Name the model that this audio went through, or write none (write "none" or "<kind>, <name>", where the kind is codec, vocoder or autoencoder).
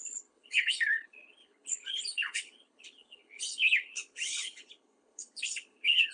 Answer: codec, HILCodec